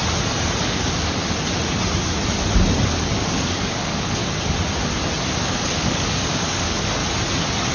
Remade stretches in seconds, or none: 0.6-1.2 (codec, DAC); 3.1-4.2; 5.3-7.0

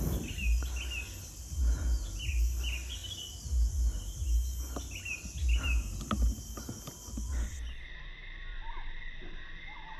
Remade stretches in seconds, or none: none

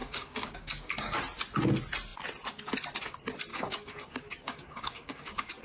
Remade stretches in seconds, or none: 0.0-1.2 (codec, DAC); 3.5-5.6

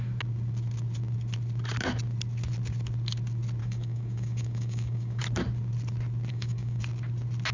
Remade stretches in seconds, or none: 3.6-5.2 (codec, DAC); 6.3-6.8

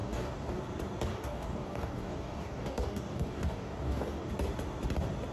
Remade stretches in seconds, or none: 0.0-0.6 (codec, DAC); 1.1-4.3